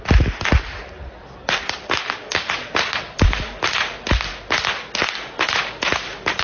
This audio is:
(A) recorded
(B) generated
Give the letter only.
A